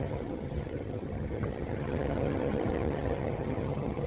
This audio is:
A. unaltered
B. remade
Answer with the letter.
B